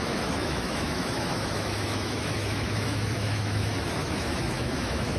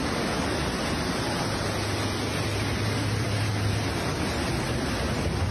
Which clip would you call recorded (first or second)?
second